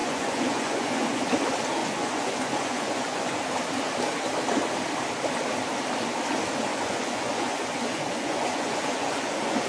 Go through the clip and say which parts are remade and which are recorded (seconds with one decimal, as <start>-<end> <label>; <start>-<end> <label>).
0.0-1.2 remade; 1.2-1.8 recorded; 1.8-3.4 remade; 3.4-6.7 recorded; 6.7-9.7 remade